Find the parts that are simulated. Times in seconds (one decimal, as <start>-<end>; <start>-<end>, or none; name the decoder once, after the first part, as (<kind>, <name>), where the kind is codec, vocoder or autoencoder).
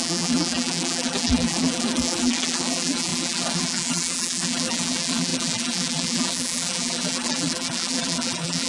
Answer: 0.0-8.7 (vocoder, BigVGAN v2)